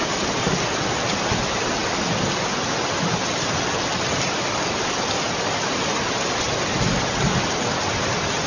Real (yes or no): yes